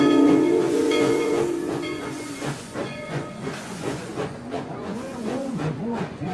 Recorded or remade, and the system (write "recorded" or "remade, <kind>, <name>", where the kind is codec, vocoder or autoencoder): remade, vocoder, Vocos